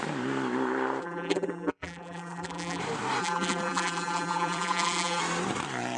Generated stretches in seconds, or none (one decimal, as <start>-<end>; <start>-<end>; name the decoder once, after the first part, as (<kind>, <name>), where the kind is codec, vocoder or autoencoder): 1.0-2.8 (vocoder, BigVGAN v2); 3.2-5.2